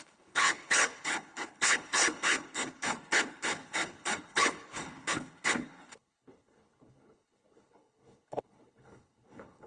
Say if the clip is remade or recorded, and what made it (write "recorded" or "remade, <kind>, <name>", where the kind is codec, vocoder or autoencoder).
remade, codec, HILCodec